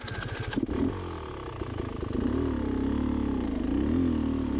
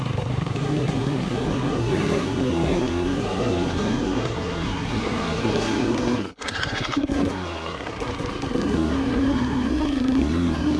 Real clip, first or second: first